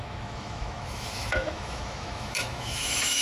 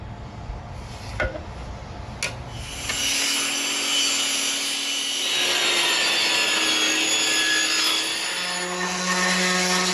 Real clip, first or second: second